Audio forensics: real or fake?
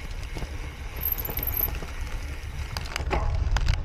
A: real